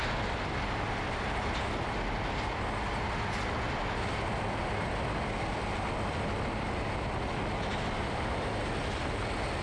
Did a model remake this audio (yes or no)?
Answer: no